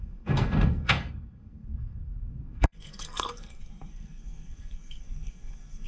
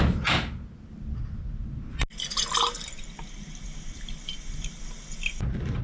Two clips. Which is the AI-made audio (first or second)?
first